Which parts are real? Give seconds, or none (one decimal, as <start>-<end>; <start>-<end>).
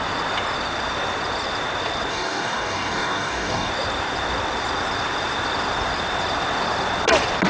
0.0-2.1; 3.7-7.5